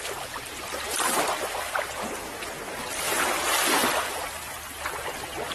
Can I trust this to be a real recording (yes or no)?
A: yes